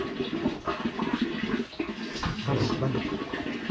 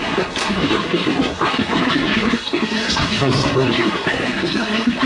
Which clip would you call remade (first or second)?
second